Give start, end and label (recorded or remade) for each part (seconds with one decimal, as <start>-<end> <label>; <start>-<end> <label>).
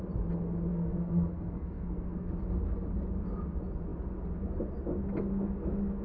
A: 0.0-0.7 recorded; 0.7-2.3 remade; 2.3-6.0 recorded